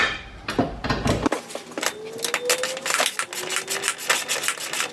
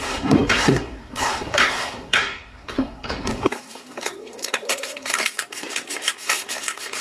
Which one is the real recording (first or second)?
first